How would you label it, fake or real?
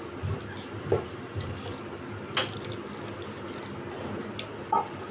real